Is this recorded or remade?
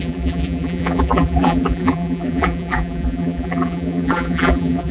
remade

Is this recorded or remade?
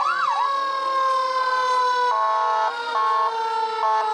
recorded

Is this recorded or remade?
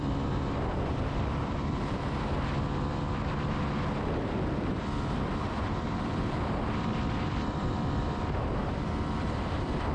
remade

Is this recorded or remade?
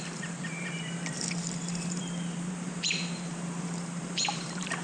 remade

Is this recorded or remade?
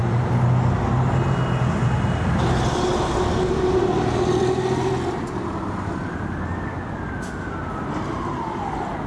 recorded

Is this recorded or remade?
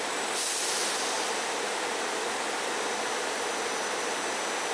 recorded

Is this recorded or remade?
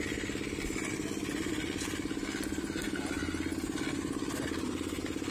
recorded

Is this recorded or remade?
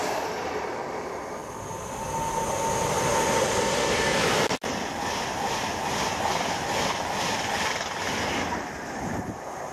recorded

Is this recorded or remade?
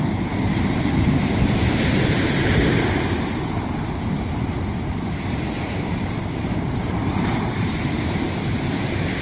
remade